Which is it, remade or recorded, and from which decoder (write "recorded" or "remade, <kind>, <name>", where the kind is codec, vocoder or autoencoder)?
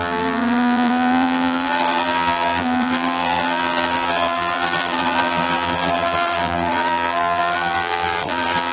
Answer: remade, vocoder, BigVGAN v2